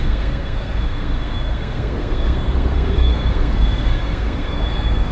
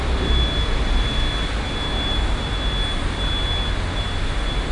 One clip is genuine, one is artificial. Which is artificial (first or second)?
first